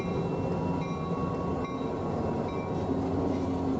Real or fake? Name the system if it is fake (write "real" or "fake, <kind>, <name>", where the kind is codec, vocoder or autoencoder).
real